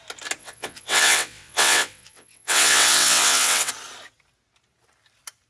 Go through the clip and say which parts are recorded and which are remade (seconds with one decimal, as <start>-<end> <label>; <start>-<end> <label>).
0.0-0.4 recorded; 0.4-3.7 remade; 3.7-5.5 recorded